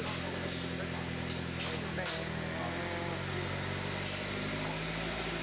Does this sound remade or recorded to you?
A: recorded